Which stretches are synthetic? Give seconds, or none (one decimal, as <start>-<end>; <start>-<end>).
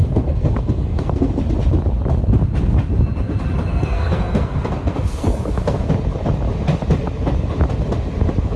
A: 0.0-1.3; 3.7-5.9